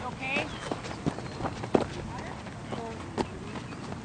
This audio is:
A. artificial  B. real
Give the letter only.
B